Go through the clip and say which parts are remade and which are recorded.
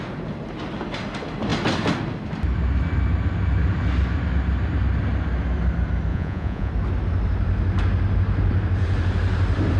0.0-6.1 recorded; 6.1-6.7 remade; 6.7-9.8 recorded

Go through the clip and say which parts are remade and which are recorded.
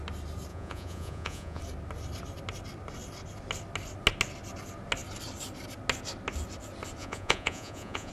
0.0-0.5 recorded; 0.5-1.6 remade; 1.6-7.0 recorded; 7.0-8.1 remade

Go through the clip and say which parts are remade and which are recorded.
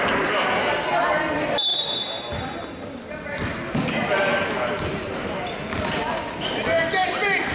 0.0-7.5 recorded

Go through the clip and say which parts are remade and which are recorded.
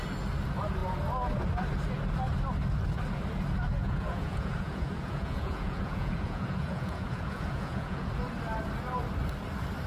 0.0-3.8 recorded; 3.8-8.1 remade; 8.1-9.9 recorded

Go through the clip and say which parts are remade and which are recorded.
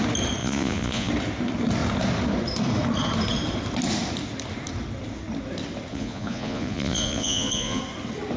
0.0-0.4 recorded; 0.4-1.1 remade; 1.1-5.9 recorded; 5.9-7.8 remade; 7.8-8.4 recorded